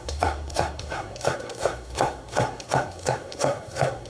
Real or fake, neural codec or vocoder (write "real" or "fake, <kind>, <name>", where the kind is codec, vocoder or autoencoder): fake, codec, SNAC